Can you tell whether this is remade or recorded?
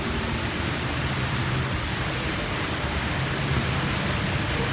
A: remade